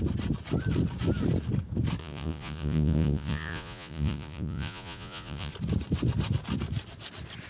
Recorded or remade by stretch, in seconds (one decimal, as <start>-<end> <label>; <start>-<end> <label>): 0.0-2.0 recorded; 2.0-5.5 remade; 5.5-7.5 recorded